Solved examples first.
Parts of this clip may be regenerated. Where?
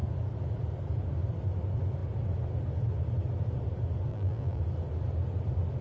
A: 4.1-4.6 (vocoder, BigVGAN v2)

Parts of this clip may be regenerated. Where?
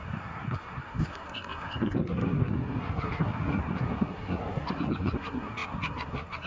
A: 0.0-6.5 (codec, SNAC)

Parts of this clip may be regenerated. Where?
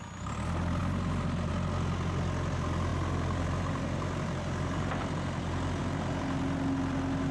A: none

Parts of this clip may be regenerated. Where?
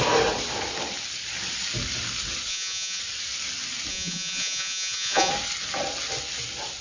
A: 2.5-3.0 (vocoder, Vocos); 3.9-5.3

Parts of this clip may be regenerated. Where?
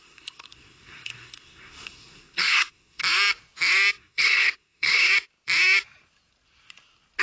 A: 0.0-3.0 (codec, SNAC); 3.9-5.1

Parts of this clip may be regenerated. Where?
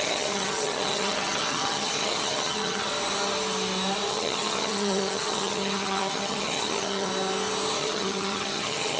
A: 0.0-2.9 (vocoder, HiFi-GAN); 4.1-7.1; 7.8-9.0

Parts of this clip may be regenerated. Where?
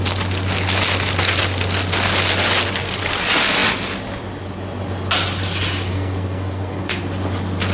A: 5.9-6.8 (codec, SNAC)